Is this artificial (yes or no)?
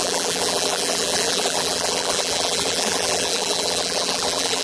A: yes